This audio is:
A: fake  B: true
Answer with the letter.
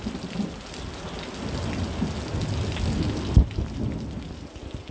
B